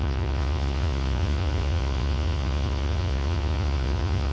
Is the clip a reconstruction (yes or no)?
yes